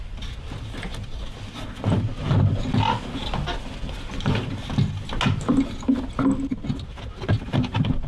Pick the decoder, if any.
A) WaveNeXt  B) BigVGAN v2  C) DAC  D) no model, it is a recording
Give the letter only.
D